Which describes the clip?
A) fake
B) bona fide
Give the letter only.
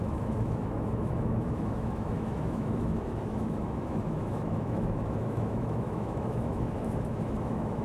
A